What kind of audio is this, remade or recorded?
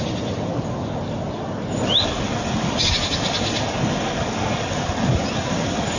recorded